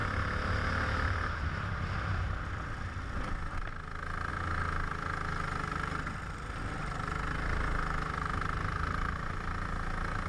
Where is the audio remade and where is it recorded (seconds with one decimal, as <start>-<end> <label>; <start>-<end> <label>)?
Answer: 0.0-10.3 recorded